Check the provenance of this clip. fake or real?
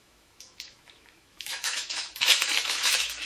fake